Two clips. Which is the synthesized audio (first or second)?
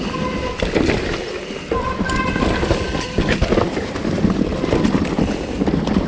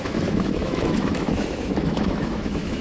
second